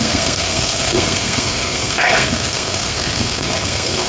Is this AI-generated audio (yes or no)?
yes